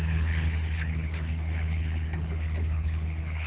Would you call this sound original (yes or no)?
no